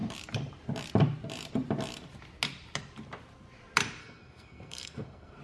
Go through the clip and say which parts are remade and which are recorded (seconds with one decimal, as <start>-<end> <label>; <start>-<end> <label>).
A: 0.0-4.0 recorded; 4.0-5.4 remade